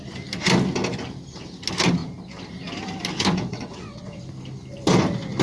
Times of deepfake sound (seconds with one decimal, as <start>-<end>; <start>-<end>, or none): 3.5-4.2